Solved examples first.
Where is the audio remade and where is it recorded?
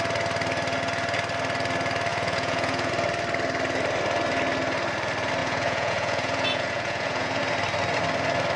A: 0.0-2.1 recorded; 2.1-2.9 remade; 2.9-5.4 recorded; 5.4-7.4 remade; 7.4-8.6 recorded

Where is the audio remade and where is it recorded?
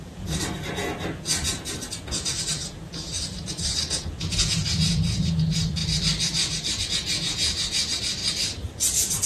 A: 0.0-5.8 remade; 5.8-6.8 recorded; 6.8-8.2 remade; 8.2-8.8 recorded; 8.8-9.3 remade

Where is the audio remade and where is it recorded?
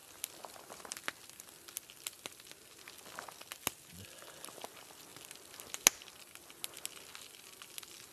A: 0.0-8.1 recorded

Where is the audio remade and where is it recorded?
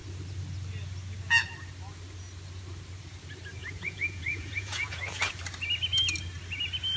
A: 0.0-3.6 recorded; 3.6-5.2 remade; 5.2-7.0 recorded